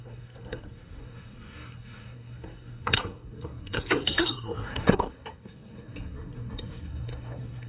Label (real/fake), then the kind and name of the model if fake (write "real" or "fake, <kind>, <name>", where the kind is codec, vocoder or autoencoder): fake, codec, SNAC